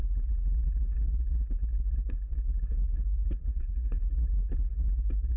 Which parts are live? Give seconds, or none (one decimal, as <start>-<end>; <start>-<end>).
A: 0.0-3.5; 4.0-5.4